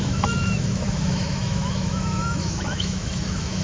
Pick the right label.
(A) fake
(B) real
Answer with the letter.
A